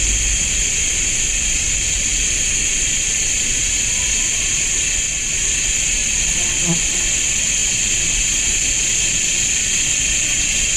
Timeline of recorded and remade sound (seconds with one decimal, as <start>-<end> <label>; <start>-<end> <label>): 0.0-10.8 recorded